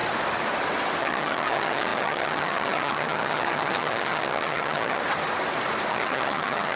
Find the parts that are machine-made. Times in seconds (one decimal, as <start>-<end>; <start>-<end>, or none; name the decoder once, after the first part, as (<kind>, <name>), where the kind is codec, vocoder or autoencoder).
1.0-5.0 (vocoder, HiFi-GAN); 5.9-6.8